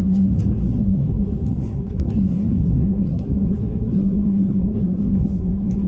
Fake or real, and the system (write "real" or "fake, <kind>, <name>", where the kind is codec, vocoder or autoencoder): fake, codec, SNAC